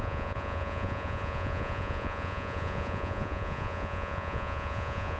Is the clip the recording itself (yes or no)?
no